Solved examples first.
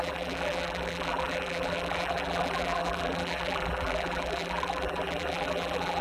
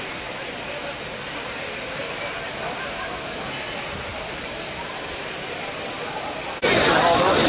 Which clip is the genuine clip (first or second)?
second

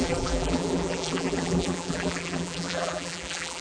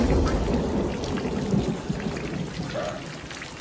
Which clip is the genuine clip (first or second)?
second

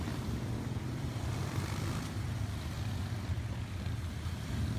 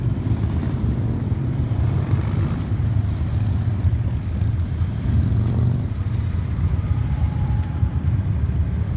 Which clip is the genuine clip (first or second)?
first